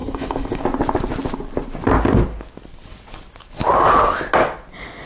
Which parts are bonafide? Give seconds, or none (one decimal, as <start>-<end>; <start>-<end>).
0.6-5.1